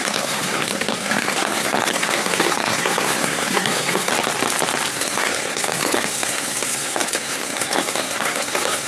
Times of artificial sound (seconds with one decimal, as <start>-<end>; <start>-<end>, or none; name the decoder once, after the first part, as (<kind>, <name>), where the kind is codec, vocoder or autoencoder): 0.0-4.1 (codec, SNAC); 4.9-8.9